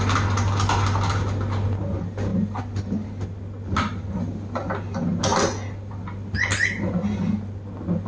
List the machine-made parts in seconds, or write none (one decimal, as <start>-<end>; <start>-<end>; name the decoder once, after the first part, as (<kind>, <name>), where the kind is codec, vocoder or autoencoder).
none